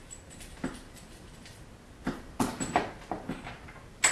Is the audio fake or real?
real